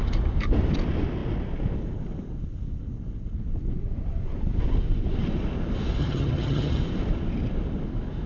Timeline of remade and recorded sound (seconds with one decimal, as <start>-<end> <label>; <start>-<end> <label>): 0.0-6.0 recorded; 6.0-6.8 remade; 6.8-8.3 recorded